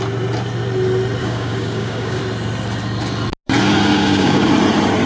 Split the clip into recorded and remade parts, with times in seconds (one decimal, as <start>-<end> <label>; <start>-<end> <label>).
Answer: 0.0-1.2 recorded; 1.2-2.2 remade; 2.2-3.9 recorded; 3.9-4.5 remade; 4.5-5.1 recorded